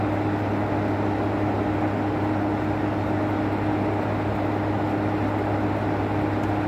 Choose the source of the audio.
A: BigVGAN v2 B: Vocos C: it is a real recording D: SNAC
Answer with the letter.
C